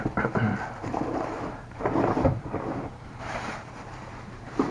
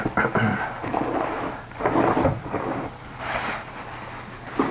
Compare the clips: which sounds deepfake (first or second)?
first